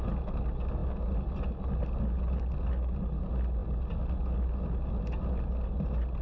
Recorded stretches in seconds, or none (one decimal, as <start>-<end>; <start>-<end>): 0.0-6.2